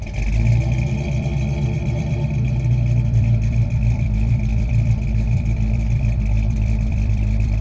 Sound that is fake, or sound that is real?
fake